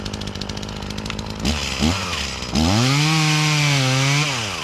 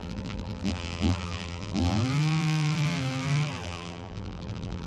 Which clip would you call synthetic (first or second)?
second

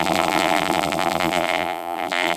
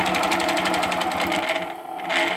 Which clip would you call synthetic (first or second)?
first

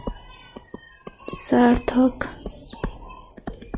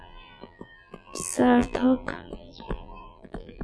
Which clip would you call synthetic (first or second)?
second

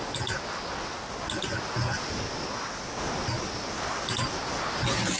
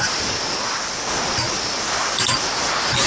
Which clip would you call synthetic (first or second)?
second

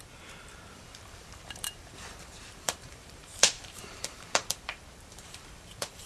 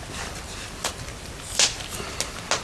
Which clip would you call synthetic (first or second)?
first